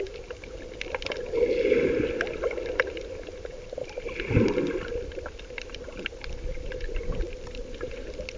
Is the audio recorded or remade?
recorded